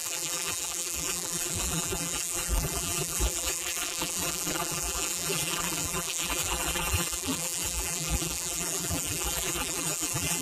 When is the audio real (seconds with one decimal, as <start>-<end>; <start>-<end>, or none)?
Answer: none